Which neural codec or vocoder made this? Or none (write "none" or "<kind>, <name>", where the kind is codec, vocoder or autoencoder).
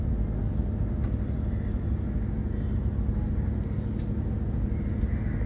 none